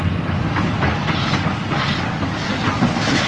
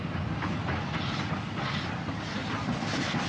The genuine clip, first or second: first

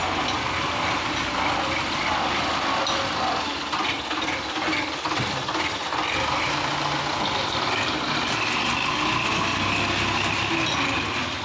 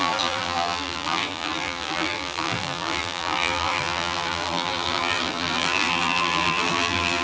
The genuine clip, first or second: first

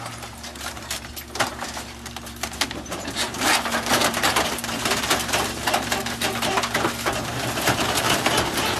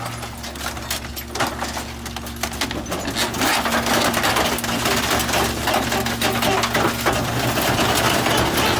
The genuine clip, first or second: second